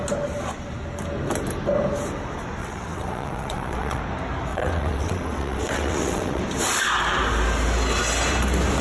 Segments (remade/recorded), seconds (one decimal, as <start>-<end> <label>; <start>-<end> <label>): 0.0-2.6 recorded; 2.6-4.0 remade; 4.0-4.5 recorded; 4.5-6.4 remade; 6.4-8.8 recorded